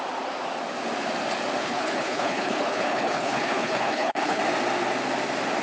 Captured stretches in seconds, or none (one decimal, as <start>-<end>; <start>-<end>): 0.0-1.6; 4.4-5.6